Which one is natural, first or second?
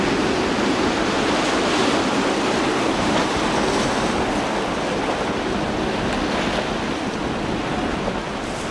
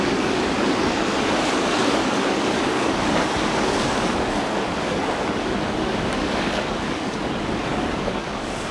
first